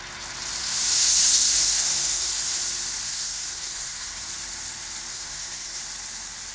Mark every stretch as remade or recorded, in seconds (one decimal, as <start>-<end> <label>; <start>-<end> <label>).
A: 0.0-0.6 recorded; 0.6-2.6 remade; 2.6-3.0 recorded; 3.0-4.2 remade; 4.2-5.1 recorded; 5.1-5.8 remade; 5.8-6.5 recorded